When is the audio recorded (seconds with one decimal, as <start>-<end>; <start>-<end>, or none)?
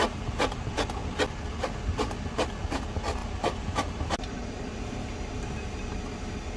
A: 0.0-3.2; 5.5-6.6